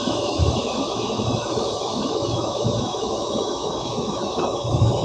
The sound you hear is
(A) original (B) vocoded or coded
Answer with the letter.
B